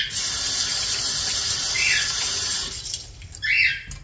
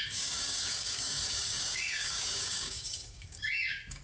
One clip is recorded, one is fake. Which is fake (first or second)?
second